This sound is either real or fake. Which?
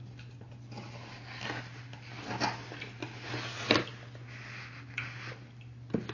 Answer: real